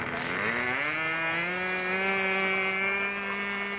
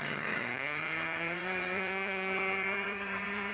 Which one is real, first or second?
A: first